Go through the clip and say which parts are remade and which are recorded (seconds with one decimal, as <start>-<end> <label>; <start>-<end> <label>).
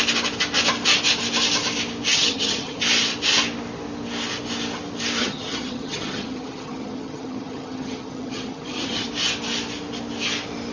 0.0-2.1 recorded; 2.1-2.8 remade; 2.8-5.2 recorded; 5.2-9.1 remade; 9.1-10.7 recorded